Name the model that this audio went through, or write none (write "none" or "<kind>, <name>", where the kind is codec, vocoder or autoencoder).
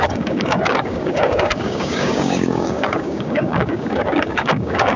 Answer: codec, DAC